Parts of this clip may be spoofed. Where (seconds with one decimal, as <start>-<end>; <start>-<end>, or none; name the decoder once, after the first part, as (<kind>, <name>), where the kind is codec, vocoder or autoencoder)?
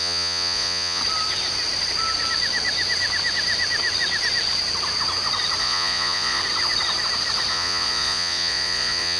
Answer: 0.0-1.0 (vocoder, Vocos); 5.6-6.4; 7.5-9.2